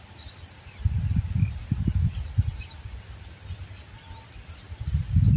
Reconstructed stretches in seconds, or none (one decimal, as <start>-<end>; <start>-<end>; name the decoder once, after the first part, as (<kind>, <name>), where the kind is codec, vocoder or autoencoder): none